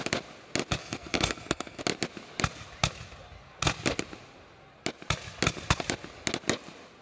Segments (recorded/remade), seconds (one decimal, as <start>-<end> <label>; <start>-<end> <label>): 0.0-0.8 recorded; 0.8-1.8 remade; 1.8-7.0 recorded